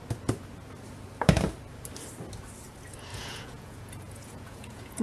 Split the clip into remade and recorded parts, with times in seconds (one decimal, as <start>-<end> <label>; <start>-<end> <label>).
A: 0.0-3.1 recorded; 3.1-5.0 remade